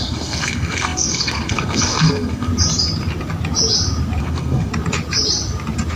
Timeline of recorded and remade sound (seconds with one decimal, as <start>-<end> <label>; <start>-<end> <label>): 0.0-2.5 remade; 2.5-4.2 recorded; 4.2-4.7 remade; 4.7-6.0 recorded